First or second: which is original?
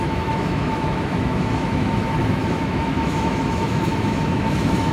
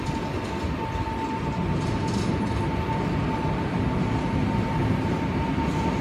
second